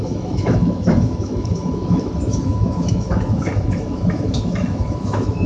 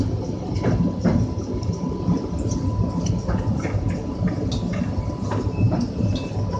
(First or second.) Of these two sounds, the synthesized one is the first